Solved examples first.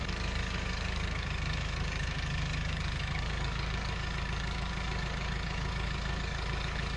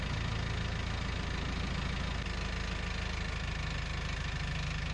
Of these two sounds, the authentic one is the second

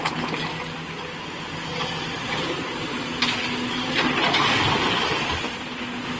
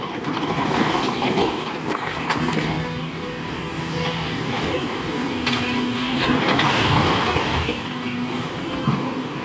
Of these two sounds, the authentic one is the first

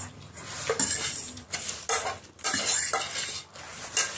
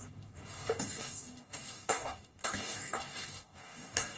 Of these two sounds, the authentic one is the first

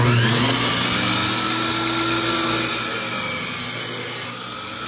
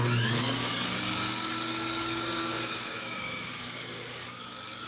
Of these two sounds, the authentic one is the first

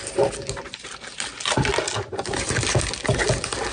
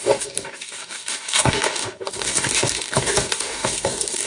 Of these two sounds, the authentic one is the first